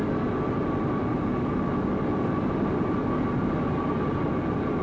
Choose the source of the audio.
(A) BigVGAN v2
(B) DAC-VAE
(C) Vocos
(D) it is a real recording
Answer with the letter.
D